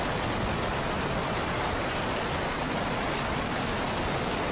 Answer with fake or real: real